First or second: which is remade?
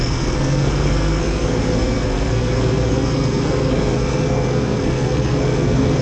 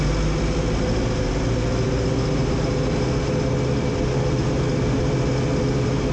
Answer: first